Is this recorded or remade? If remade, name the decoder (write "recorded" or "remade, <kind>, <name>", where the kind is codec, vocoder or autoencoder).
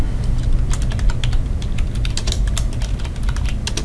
recorded